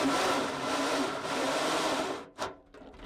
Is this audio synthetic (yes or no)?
no